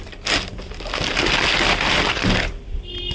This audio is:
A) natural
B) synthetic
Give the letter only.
A